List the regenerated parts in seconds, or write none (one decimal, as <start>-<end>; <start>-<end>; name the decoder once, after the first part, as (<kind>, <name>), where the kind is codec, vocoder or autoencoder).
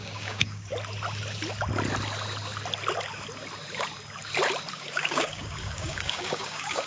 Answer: 0.0-0.7 (codec, DAC); 4.7-6.9